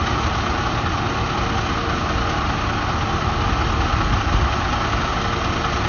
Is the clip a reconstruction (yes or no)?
no